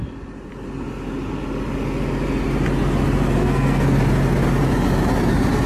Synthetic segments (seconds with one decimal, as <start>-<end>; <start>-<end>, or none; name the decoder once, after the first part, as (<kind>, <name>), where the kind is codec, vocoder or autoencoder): 3.4-4.0 (codec, SNAC)